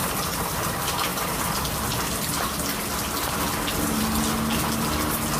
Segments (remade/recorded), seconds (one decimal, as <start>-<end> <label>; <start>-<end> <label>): 0.0-5.4 recorded